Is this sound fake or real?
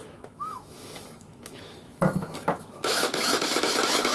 fake